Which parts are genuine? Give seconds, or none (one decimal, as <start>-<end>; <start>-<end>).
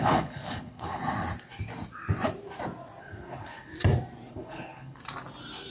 1.0-3.0; 3.7-4.3; 5.0-5.7